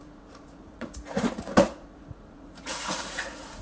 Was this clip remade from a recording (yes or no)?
yes